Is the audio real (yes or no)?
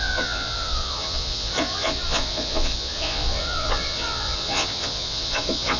no